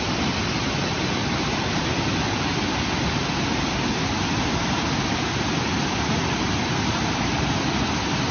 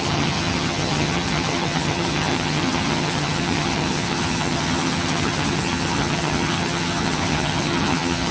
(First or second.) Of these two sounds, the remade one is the second